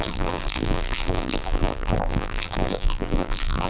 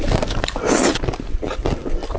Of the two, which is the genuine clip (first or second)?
second